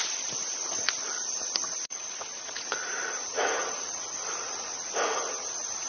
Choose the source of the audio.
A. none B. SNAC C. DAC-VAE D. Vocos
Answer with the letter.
D